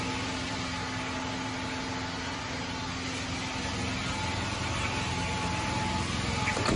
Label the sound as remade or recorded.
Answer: recorded